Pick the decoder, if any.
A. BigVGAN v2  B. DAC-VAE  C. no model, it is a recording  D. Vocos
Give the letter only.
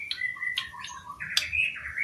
C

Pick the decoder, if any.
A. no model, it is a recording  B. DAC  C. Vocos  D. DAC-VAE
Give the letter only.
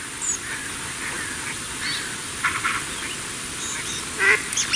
A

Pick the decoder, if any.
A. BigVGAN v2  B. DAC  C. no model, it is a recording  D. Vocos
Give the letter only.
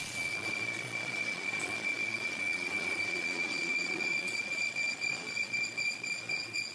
D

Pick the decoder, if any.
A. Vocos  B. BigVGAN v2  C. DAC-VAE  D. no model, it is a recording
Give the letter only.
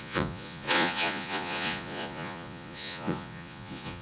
A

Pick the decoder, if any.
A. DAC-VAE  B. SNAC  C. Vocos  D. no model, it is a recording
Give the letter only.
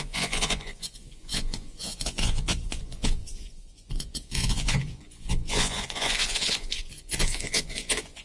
C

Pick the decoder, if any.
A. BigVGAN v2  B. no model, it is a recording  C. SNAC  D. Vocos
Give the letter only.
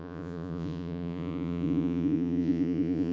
D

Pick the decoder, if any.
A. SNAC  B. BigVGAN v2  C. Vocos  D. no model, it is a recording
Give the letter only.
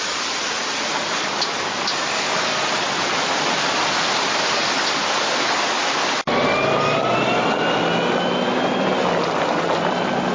D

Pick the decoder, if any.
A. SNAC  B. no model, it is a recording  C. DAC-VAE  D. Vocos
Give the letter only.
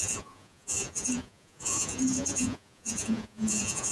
D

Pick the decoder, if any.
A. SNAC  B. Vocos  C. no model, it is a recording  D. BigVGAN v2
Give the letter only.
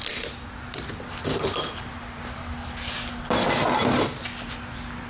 C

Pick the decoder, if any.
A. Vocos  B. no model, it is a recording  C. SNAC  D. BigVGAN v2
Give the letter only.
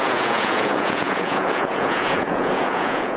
A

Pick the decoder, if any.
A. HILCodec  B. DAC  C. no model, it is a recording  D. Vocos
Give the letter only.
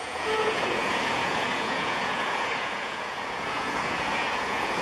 D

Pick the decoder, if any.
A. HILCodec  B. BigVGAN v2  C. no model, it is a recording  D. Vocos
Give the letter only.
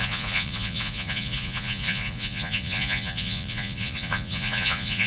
D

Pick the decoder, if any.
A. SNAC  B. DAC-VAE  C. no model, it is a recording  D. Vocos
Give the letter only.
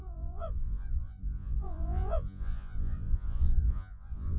D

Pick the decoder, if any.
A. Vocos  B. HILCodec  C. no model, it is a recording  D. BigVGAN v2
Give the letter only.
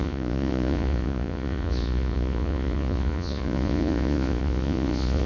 A